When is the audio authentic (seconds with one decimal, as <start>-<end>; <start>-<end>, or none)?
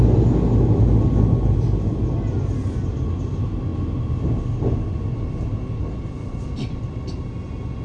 0.0-7.8